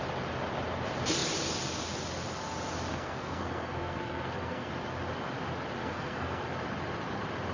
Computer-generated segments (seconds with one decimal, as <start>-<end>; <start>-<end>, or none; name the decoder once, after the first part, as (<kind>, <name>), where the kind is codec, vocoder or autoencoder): 2.9-4.7 (codec, SNAC); 5.8-6.4